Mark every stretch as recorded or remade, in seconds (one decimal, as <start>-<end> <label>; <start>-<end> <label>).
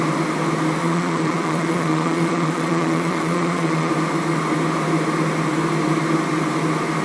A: 0.0-0.8 recorded; 0.8-3.9 remade; 3.9-7.0 recorded